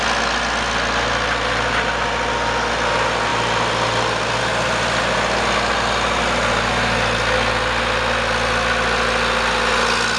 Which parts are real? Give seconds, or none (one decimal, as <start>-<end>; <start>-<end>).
0.0-10.2